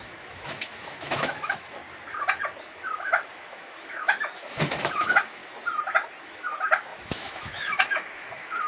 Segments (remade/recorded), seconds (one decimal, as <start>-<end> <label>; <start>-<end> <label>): 0.0-1.8 remade; 1.8-2.6 recorded; 2.6-5.4 remade; 5.4-6.2 recorded; 6.2-8.7 remade